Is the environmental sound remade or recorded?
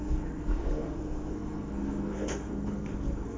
remade